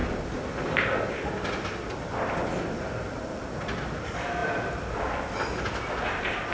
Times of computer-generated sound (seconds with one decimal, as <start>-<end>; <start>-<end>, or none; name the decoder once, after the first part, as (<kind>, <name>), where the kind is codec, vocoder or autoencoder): none